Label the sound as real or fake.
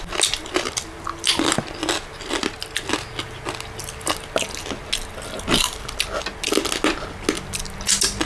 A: real